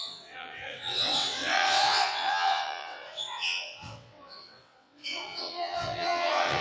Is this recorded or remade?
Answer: remade